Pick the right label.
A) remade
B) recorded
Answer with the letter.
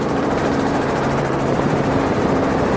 A